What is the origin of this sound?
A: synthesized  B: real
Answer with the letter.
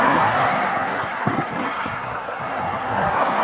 A